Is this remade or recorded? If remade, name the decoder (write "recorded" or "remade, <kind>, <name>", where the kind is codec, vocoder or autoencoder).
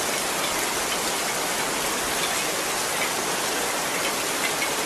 recorded